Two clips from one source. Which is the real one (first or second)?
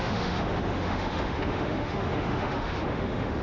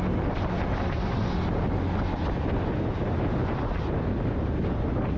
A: second